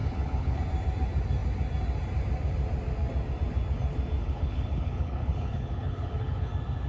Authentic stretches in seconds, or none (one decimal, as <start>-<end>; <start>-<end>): 0.6-4.2; 6.5-6.9